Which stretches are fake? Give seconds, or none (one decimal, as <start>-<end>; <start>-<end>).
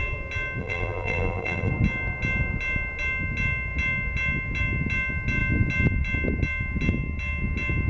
0.6-1.7